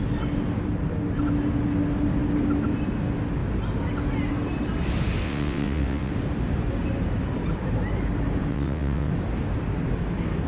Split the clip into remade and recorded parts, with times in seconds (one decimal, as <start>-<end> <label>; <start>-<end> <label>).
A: 0.0-5.2 recorded; 5.2-6.1 remade; 6.1-8.5 recorded; 8.5-9.1 remade; 9.1-10.5 recorded